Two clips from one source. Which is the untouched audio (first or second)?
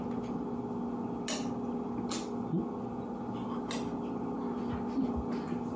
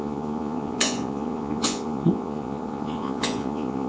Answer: first